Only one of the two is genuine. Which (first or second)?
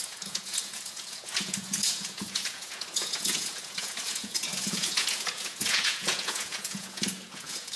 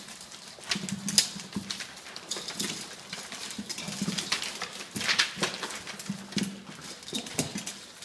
second